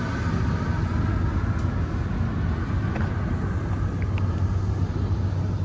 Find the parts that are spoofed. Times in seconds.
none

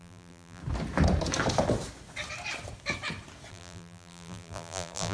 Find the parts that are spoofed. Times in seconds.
0.0-0.6; 3.5-5.1

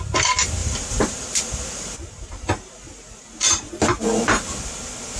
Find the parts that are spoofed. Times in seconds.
0.6-3.7